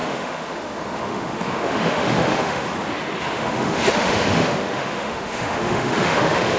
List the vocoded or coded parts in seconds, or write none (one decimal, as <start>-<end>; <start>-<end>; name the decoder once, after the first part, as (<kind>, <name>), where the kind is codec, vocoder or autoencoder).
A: 0.0-2.7 (autoencoder, DAC-VAE); 3.2-6.6